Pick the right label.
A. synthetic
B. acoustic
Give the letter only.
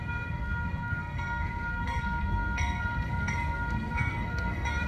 A